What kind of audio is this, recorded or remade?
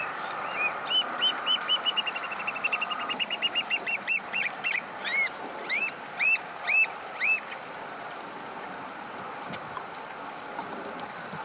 remade